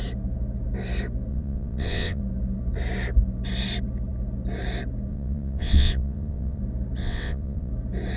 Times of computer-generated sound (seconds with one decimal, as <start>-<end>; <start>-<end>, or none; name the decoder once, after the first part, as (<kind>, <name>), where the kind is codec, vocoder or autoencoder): 1.3-2.2 (vocoder, WaveNeXt); 5.1-6.6; 7.0-7.7